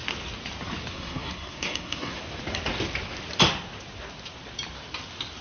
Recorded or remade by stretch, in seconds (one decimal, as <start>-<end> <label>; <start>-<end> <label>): 0.0-0.9 recorded; 0.9-2.2 remade; 2.2-5.4 recorded

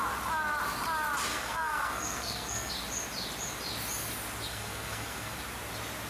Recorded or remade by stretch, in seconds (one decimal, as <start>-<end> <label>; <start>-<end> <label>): 0.0-1.3 recorded; 1.3-2.7 remade; 2.7-4.5 recorded; 4.5-5.4 remade; 5.4-6.1 recorded